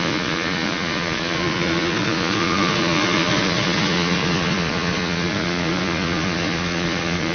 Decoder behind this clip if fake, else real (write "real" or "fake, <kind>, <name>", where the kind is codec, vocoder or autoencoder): fake, vocoder, Vocos